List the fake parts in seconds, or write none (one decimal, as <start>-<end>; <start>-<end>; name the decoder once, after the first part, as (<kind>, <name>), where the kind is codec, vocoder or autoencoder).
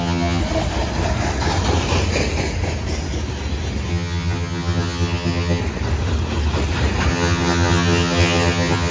0.0-0.4 (vocoder, HiFi-GAN); 3.9-5.6; 7.1-8.9